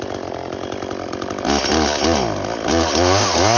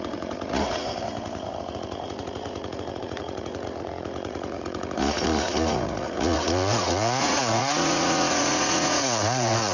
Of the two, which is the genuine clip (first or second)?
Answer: first